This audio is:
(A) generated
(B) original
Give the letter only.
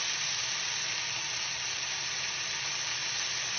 B